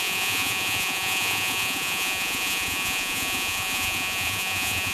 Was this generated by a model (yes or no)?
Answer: yes